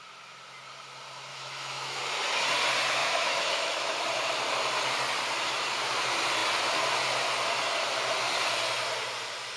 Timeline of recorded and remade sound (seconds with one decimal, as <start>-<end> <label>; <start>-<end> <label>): 0.0-1.3 recorded; 1.3-2.0 remade; 2.0-3.0 recorded; 3.0-4.0 remade; 4.0-9.6 recorded